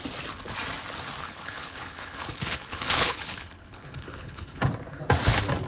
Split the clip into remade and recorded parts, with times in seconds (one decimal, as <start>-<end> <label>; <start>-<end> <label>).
0.0-1.2 recorded; 1.2-4.6 remade; 4.6-5.7 recorded